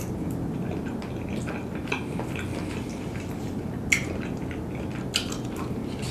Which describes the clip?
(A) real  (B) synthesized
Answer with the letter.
A